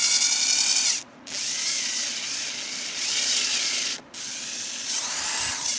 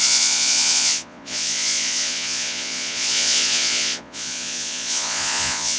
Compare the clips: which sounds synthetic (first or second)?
second